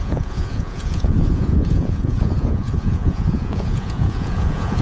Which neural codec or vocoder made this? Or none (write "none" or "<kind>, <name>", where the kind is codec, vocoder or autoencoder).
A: vocoder, Vocos